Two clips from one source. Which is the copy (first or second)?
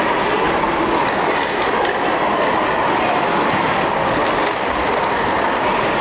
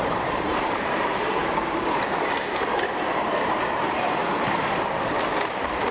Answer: second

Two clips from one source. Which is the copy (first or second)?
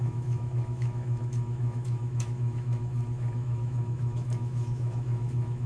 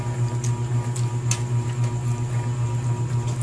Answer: first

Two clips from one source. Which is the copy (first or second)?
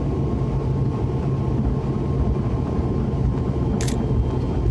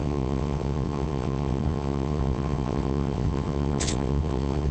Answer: second